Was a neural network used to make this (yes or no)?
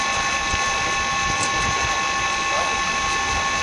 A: no